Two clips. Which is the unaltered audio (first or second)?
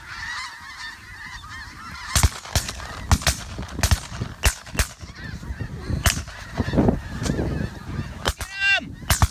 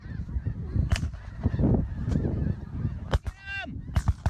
first